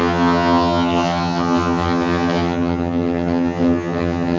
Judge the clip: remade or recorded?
remade